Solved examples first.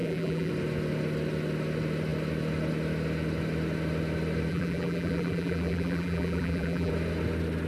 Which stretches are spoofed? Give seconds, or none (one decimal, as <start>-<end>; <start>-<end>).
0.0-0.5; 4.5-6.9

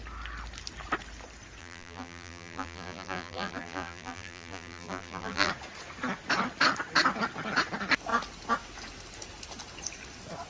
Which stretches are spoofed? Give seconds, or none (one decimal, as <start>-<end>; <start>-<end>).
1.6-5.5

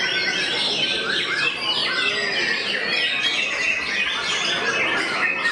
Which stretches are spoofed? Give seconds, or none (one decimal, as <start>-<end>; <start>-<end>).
none

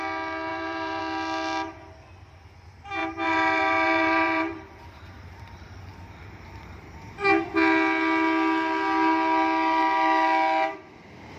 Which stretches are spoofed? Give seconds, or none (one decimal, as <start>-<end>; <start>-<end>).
0.5-1.0; 3.0-6.9

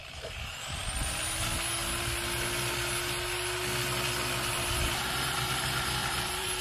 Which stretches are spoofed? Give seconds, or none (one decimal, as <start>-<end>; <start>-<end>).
0.0-0.8; 4.5-6.6